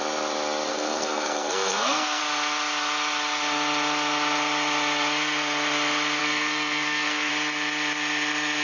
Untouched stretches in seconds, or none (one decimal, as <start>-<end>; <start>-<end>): 0.0-0.7; 2.2-6.2; 7.3-8.6